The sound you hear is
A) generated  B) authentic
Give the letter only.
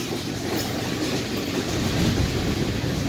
B